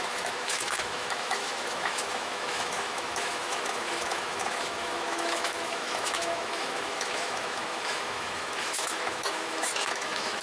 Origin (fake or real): fake